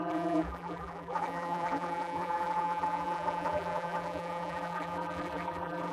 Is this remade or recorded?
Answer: remade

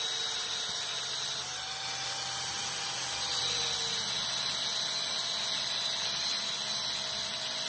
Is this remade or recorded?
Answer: recorded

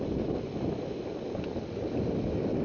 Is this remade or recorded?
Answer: recorded